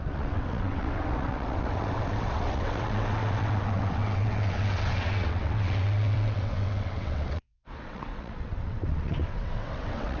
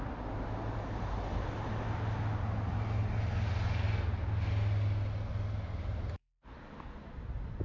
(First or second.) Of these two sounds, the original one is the second